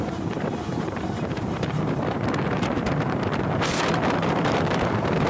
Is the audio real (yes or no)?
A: no